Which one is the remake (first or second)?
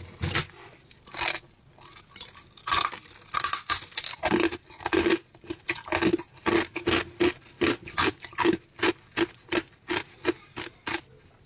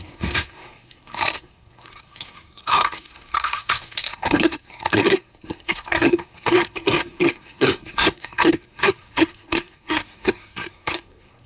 second